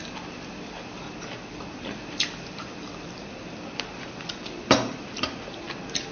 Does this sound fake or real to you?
real